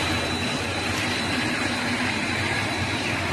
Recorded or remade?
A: remade